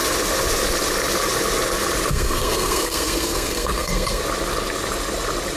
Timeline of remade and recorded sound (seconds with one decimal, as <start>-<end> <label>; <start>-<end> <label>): 0.0-2.1 recorded; 2.1-4.2 remade; 4.2-5.6 recorded